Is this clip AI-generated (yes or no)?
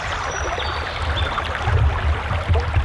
no